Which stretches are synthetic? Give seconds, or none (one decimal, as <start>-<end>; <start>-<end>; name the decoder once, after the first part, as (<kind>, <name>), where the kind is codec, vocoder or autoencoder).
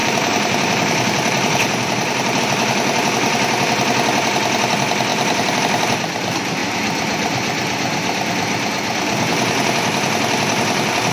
0.0-2.4 (vocoder, BigVGAN v2); 5.1-5.6